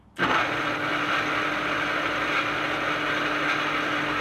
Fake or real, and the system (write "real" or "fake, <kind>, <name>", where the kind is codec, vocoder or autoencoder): real